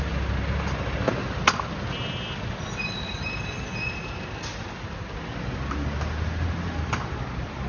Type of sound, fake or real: real